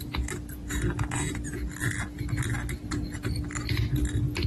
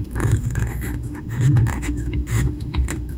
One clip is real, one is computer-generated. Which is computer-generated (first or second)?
second